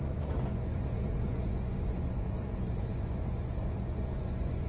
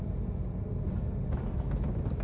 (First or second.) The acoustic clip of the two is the second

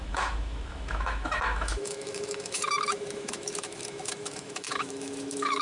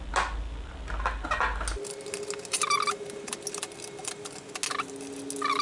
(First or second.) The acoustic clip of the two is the second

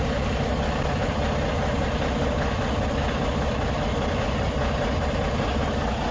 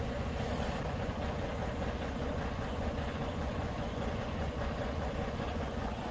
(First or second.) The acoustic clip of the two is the first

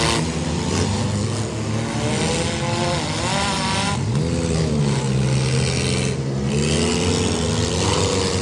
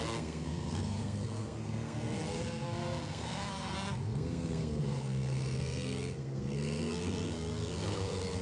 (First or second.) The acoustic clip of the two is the first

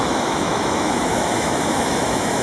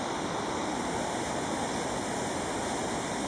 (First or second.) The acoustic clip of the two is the second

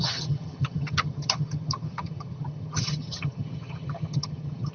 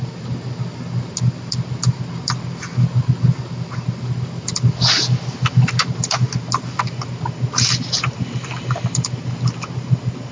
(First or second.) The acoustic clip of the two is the second